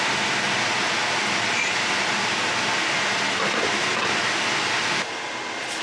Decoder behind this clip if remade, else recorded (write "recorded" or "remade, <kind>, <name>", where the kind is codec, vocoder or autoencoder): recorded